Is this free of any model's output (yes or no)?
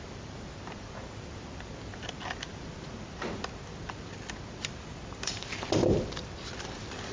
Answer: no